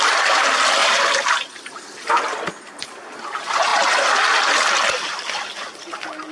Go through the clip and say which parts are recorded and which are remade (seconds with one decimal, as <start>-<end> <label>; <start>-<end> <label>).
0.0-3.7 remade; 3.7-6.3 recorded

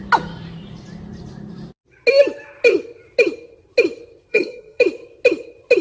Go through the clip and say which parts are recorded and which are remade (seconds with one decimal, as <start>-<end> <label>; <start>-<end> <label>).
0.0-4.3 recorded; 4.3-4.8 remade; 4.8-5.8 recorded